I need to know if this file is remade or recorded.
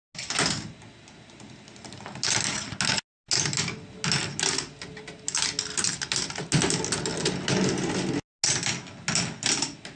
recorded